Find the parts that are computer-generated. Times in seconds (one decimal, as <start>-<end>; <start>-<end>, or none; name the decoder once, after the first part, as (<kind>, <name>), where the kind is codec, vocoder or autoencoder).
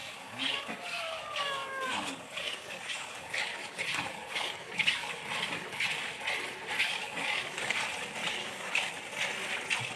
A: 0.0-5.2 (codec, DAC); 6.8-7.8; 8.2-8.9